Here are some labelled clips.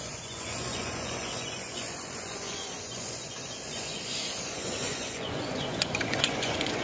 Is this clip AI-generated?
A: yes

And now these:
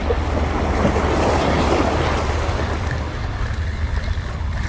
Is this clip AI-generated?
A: no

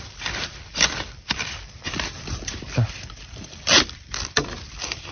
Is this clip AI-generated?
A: yes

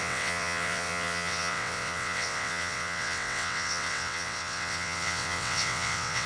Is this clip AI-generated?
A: yes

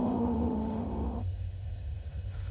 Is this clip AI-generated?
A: yes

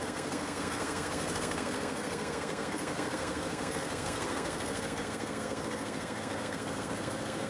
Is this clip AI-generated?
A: yes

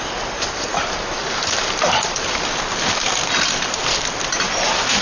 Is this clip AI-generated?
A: no